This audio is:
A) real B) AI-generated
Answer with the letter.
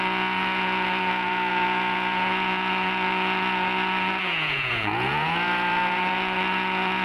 B